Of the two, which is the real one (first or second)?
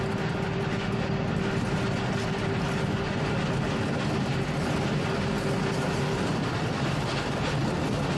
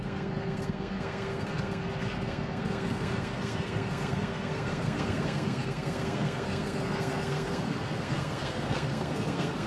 first